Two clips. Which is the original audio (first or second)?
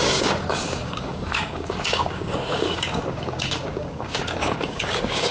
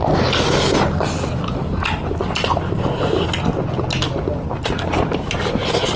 second